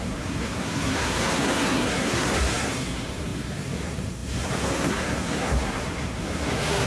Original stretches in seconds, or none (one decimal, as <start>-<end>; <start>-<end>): none